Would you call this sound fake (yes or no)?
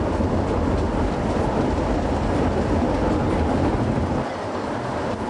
no